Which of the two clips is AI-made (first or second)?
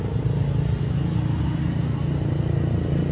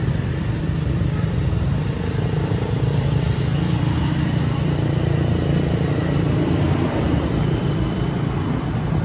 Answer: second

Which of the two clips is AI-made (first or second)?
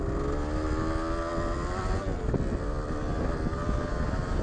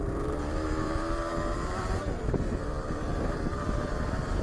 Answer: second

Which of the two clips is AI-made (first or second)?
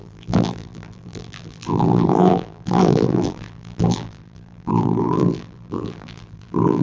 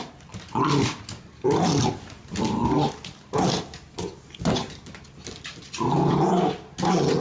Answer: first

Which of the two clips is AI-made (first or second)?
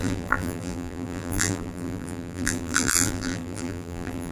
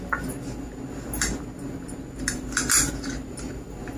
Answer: first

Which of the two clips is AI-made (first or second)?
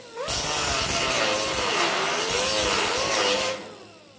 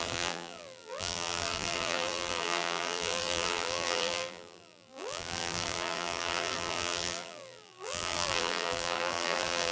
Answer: second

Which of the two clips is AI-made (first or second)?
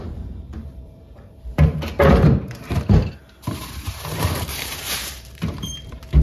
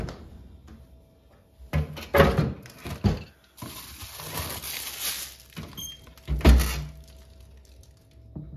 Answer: first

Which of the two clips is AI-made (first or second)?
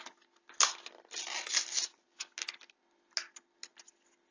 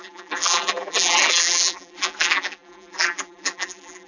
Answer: second